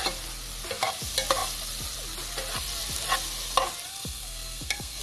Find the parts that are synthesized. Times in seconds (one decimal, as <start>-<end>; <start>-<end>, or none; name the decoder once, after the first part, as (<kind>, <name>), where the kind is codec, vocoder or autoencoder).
3.9-5.0 (codec, SNAC)